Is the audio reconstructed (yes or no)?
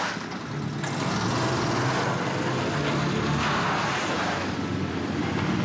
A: no